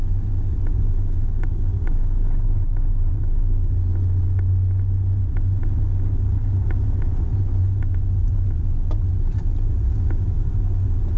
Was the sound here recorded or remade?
recorded